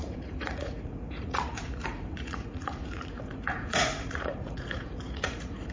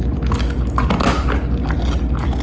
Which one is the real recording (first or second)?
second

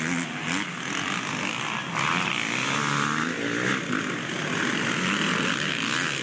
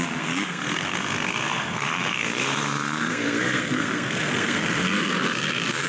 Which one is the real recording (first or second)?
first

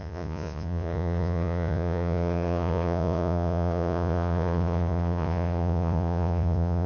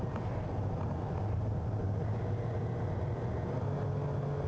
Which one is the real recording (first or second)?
second